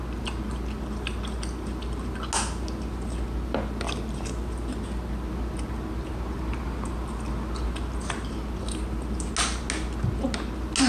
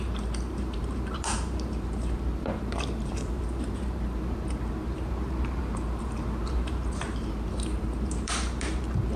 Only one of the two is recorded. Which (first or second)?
first